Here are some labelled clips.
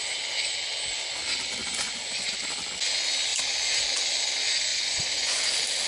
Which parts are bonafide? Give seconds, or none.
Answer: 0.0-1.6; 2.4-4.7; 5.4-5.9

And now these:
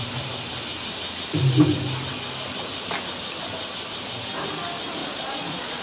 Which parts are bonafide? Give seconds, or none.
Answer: 0.0-5.0

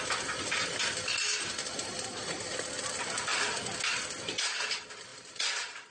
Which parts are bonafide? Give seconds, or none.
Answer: 0.0-5.1

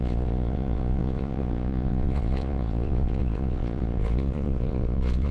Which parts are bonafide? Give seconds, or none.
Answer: none

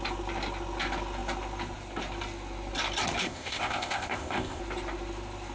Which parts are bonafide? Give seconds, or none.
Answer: 0.0-3.2; 4.6-5.5

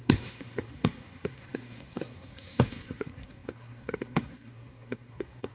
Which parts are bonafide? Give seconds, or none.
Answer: none

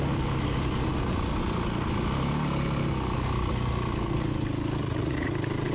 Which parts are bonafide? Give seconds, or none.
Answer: 0.0-4.8; 5.3-5.7